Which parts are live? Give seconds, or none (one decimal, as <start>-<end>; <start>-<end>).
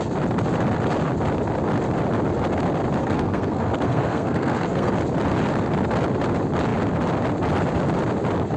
0.0-3.0; 4.9-8.6